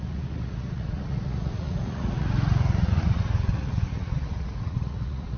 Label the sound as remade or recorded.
remade